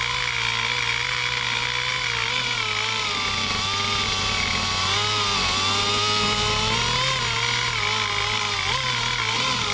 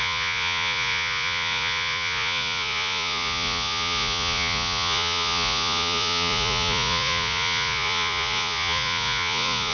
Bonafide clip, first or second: first